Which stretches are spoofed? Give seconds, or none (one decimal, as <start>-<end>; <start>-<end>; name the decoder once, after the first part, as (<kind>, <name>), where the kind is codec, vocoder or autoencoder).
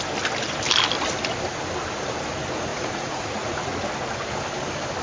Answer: 2.7-3.8 (vocoder, Vocos)